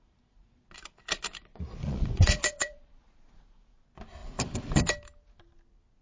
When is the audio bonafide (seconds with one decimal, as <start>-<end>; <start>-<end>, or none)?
0.0-1.5; 3.3-6.0